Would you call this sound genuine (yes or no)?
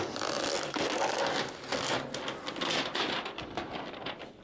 yes